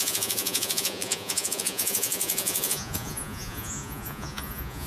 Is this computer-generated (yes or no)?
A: yes